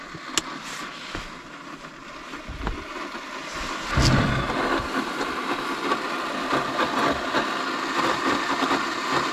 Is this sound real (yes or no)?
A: yes